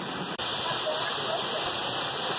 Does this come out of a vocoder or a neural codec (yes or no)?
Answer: no